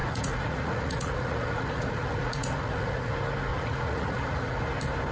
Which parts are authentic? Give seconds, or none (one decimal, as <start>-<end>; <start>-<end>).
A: 3.1-3.5; 4.6-5.1